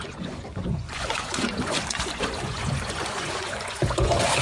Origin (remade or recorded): remade